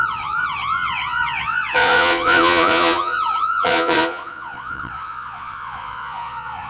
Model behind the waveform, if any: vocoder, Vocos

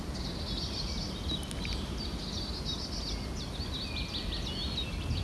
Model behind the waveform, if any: none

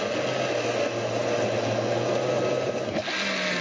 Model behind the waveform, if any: none